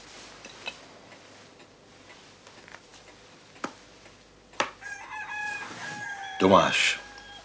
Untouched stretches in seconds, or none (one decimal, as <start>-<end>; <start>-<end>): 0.0-7.4